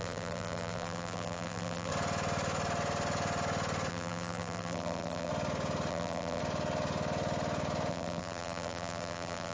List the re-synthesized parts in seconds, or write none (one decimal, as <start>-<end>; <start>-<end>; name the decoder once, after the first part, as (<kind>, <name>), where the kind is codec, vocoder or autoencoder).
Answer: 0.0-1.9 (vocoder, BigVGAN v2); 3.9-5.3; 5.9-6.4; 7.9-9.5